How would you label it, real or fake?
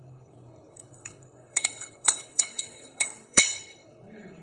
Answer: fake